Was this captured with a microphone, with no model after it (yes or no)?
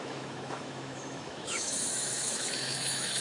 no